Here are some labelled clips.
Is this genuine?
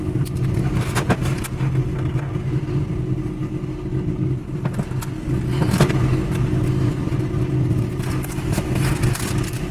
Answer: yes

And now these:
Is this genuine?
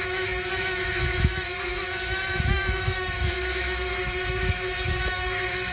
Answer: no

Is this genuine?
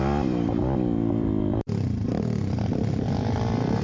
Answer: no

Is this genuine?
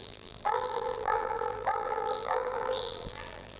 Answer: no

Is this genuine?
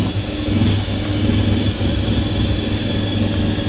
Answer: yes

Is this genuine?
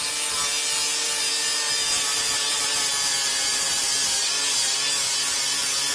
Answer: yes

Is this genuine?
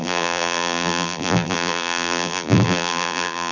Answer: no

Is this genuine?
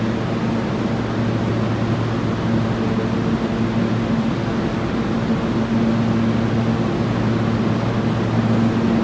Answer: yes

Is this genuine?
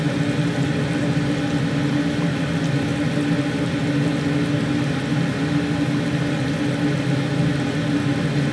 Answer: yes